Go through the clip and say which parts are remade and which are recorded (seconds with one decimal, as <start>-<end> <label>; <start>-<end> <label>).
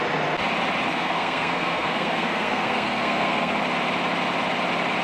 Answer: 0.0-0.9 recorded; 0.9-3.6 remade; 3.6-5.0 recorded